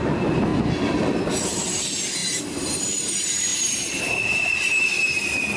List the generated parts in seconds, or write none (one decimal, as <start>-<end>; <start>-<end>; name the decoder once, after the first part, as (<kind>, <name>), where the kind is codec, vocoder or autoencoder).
0.0-0.5 (vocoder, BigVGAN v2); 1.4-5.6